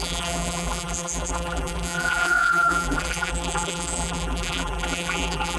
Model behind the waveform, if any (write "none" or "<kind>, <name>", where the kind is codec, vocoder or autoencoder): vocoder, BigVGAN v2